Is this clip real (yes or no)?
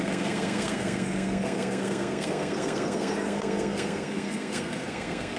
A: no